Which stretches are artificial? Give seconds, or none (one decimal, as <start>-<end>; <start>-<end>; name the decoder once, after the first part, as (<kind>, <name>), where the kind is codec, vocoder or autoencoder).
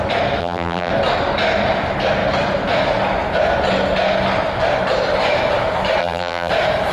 0.4-0.9 (vocoder, BigVGAN v2); 6.0-6.5